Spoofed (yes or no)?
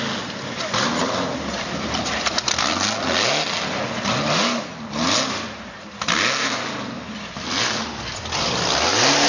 no